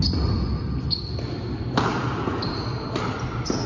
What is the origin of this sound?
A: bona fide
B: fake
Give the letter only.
A